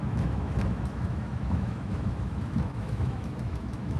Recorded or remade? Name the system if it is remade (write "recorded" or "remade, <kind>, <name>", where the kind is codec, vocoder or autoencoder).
remade, autoencoder, DAC-VAE